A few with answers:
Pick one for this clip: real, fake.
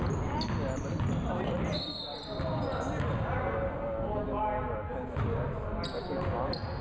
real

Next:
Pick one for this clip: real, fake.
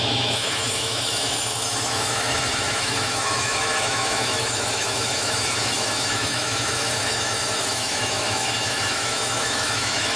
fake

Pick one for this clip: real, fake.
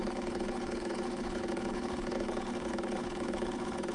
fake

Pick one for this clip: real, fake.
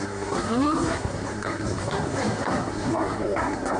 fake